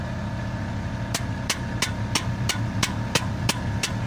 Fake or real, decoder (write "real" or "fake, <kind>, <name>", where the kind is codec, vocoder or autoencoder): real